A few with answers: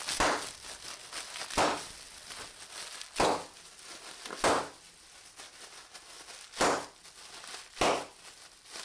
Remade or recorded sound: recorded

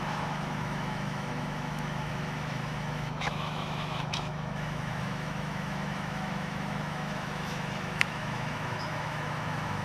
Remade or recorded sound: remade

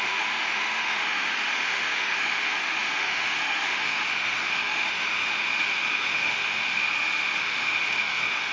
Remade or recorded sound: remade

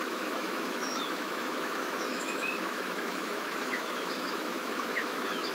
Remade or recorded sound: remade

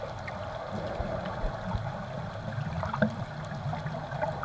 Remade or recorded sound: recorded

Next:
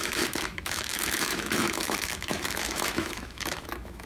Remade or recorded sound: remade